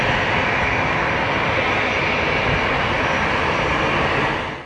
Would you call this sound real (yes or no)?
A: yes